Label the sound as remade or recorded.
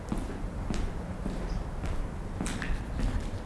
remade